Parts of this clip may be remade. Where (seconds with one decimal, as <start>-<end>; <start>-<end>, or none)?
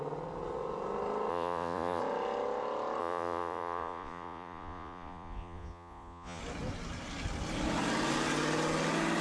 1.3-2.0; 3.0-6.4